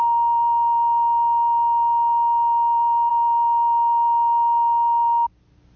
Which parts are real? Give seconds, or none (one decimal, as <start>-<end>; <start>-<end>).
0.0-5.8